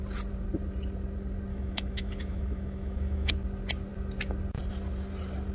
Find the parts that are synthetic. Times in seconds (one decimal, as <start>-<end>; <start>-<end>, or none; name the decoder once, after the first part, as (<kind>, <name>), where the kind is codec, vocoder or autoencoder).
1.5-3.3 (autoencoder, DAC-VAE)